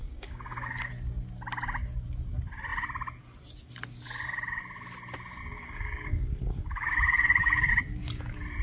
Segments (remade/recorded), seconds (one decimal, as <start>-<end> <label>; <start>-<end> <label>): 0.0-0.9 remade; 0.9-5.4 recorded; 5.4-7.7 remade; 7.7-8.6 recorded